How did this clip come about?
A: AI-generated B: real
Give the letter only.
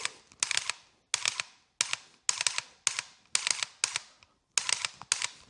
B